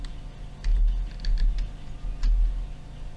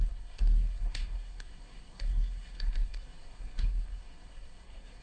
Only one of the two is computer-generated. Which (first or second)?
second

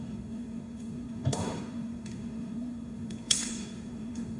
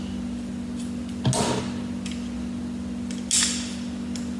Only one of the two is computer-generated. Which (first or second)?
first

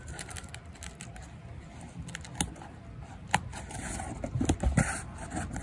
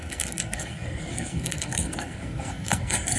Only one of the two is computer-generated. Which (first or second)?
second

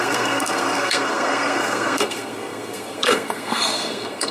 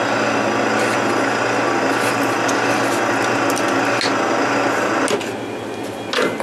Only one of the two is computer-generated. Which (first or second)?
first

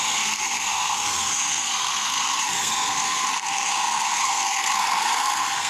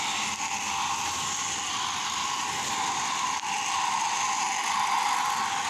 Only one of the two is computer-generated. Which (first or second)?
first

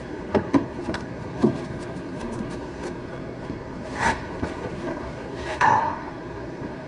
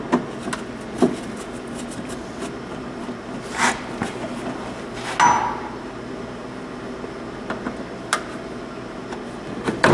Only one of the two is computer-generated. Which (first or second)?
first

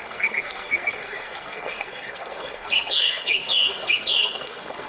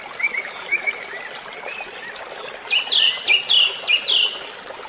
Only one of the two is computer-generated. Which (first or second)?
first